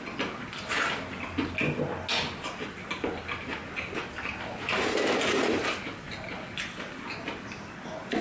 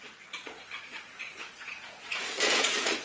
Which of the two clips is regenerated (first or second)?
second